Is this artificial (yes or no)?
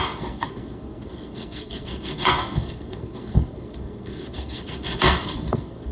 yes